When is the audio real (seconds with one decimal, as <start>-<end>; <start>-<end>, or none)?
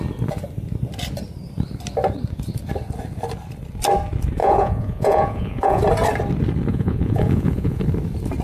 0.0-4.4; 5.8-6.7; 7.8-8.4